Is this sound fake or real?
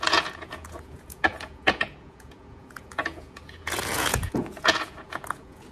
fake